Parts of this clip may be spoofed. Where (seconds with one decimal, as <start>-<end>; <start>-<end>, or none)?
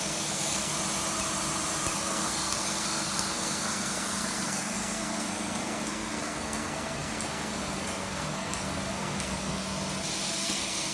0.0-0.7; 2.0-9.6; 10.2-10.9